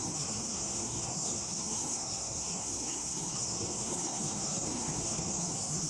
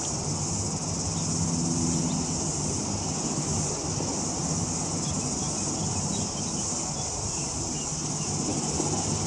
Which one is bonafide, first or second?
second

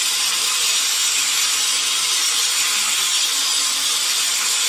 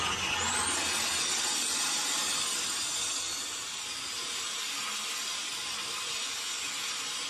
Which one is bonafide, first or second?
second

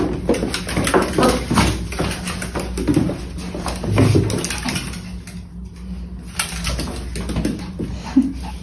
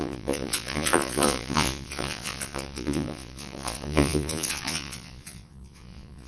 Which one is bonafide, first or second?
first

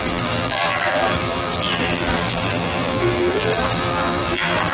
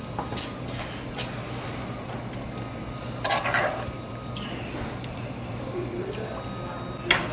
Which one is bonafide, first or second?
second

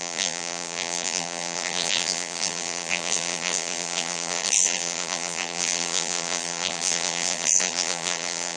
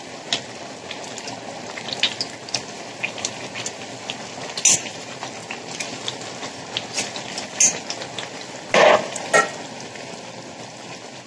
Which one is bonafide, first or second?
second